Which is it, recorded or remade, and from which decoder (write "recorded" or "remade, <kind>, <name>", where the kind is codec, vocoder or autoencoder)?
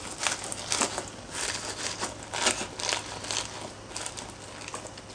recorded